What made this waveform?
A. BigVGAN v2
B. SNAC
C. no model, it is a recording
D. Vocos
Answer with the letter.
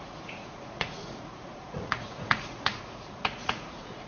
D